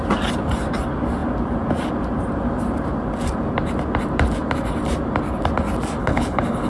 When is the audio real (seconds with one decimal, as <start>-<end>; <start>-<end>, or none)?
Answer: 0.0-6.0